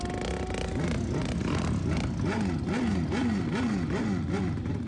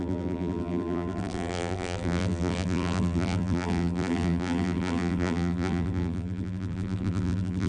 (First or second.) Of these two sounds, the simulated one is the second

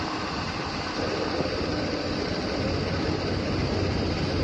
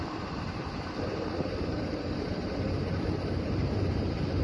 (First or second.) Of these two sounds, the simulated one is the second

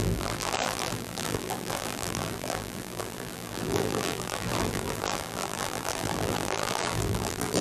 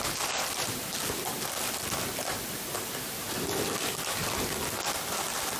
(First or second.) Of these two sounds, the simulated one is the first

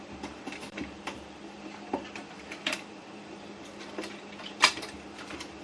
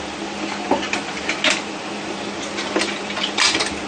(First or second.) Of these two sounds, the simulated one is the first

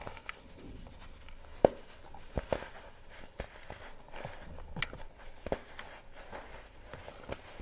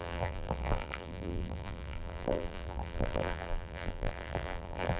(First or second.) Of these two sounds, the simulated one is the second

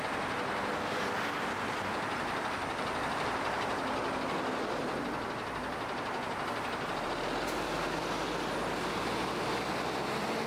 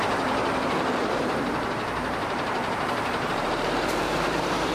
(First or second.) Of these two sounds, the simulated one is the second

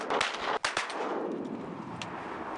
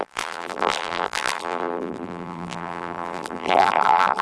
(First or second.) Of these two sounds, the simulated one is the second